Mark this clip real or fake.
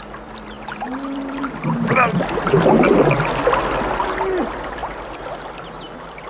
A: real